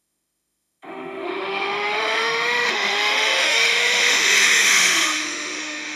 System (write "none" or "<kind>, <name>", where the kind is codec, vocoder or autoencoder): autoencoder, DAC-VAE